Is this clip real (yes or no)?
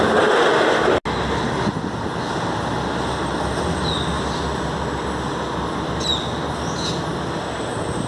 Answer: yes